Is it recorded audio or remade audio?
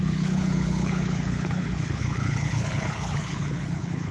remade